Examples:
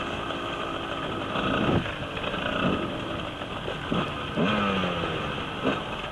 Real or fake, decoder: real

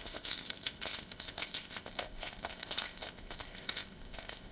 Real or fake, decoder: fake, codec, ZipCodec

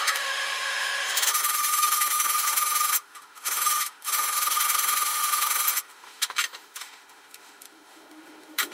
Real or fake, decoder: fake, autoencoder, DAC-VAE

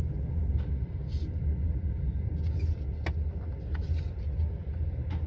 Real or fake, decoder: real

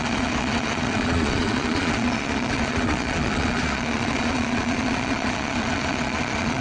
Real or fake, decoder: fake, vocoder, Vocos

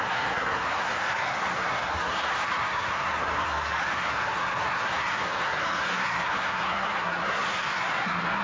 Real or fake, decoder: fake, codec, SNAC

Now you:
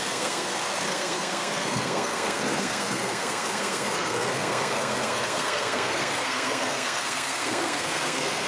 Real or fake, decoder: fake, codec, SNAC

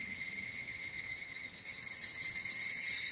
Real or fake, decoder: fake, vocoder, HiFi-GAN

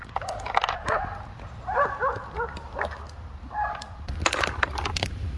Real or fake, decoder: fake, vocoder, BigVGAN v2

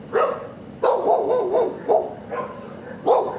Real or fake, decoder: real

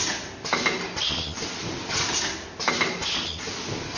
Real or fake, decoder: real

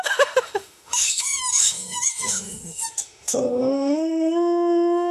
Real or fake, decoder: fake, autoencoder, DAC-VAE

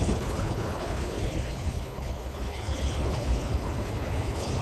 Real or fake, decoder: fake, codec, HILCodec